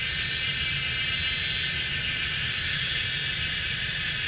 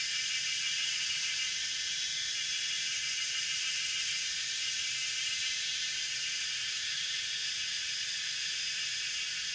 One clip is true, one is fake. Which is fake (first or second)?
second